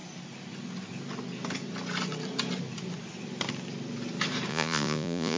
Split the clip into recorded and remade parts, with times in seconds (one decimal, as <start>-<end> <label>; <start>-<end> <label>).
0.0-4.5 recorded; 4.5-5.4 remade